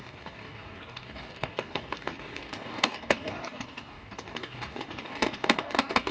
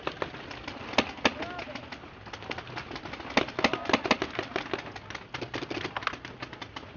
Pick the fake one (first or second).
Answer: first